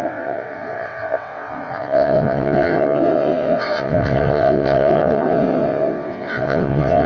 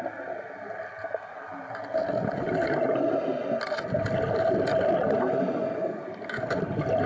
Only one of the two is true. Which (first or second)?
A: second